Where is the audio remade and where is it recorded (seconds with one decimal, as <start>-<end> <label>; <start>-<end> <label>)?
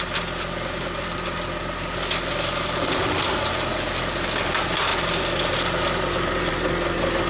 0.0-7.3 recorded